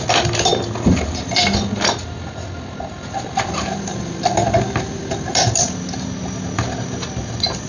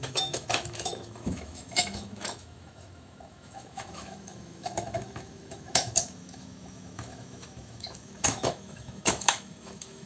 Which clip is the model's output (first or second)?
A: second